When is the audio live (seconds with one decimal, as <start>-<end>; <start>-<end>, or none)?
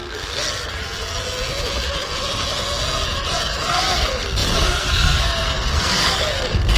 0.8-3.4